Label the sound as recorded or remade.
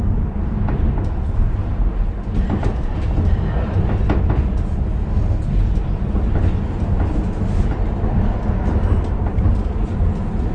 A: recorded